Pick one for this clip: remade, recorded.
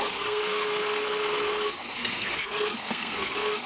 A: remade